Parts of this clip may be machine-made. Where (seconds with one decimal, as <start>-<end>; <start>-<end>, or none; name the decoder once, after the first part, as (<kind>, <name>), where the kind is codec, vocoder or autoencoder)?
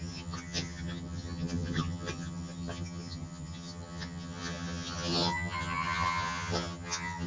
0.0-7.3 (vocoder, HiFi-GAN)